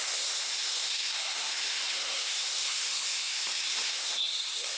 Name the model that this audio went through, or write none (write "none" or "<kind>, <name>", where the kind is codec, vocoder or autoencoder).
codec, SNAC